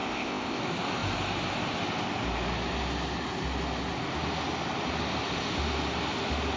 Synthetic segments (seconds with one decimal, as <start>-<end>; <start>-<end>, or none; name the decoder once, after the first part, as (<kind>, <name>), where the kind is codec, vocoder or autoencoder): 0.0-0.6 (codec, ZipCodec)